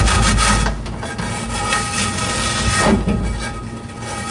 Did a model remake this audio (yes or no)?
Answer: no